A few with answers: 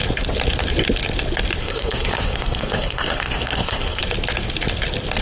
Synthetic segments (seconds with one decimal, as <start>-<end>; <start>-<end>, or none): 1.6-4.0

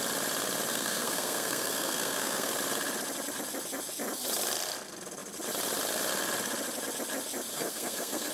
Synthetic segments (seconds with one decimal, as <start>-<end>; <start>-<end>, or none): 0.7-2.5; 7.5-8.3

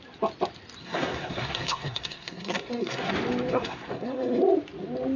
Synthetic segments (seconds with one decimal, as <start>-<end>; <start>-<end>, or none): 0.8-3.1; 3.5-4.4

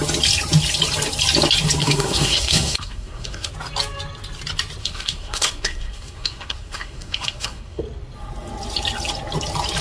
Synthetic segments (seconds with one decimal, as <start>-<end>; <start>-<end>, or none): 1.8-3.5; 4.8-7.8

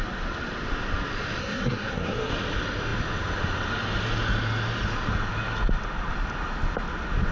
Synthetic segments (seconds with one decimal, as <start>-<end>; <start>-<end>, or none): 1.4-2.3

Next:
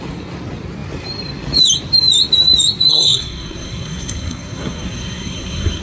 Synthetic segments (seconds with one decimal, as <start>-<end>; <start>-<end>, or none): 2.9-5.8